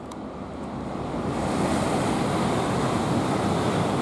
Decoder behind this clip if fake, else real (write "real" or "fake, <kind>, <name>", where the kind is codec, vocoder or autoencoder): real